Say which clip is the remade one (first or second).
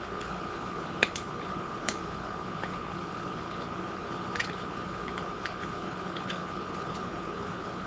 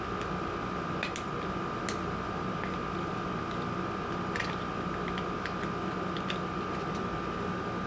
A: first